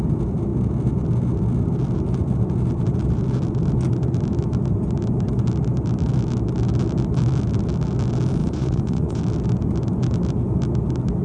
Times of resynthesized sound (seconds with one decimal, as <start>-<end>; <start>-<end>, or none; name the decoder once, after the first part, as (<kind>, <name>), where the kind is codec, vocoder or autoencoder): 8.4-9.2 (vocoder, Vocos)